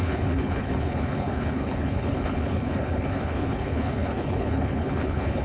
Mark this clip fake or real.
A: fake